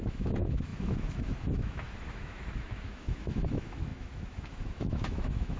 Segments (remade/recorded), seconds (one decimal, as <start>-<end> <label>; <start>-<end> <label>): 0.0-5.6 remade